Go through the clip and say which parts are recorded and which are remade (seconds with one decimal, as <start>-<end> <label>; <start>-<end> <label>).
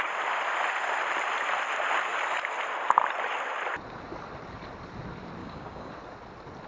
0.0-5.4 recorded; 5.4-5.9 remade; 5.9-6.7 recorded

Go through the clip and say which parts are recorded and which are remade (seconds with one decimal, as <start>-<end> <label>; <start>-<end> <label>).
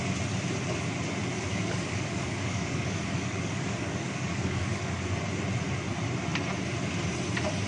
0.0-1.5 recorded; 1.5-5.0 remade; 5.0-7.7 recorded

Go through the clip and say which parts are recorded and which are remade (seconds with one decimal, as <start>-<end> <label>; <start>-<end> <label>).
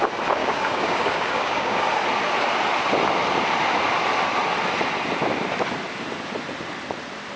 0.0-0.4 recorded; 0.4-1.8 remade; 1.8-7.4 recorded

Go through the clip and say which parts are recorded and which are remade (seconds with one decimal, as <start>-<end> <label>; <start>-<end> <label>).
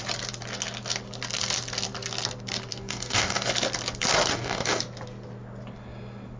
0.0-2.7 recorded; 2.7-3.5 remade; 3.5-4.3 recorded; 4.3-4.8 remade; 4.8-6.4 recorded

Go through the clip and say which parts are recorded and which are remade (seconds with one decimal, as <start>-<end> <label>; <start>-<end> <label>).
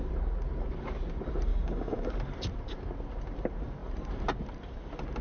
0.0-1.5 recorded; 1.5-2.1 remade; 2.1-5.2 recorded